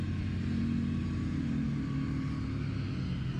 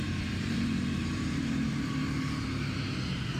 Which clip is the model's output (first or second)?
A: second